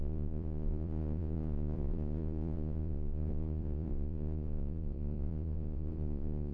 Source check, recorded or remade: remade